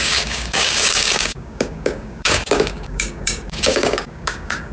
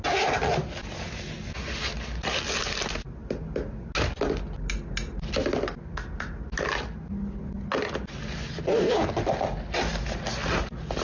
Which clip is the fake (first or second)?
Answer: first